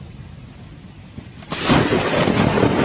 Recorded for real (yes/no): no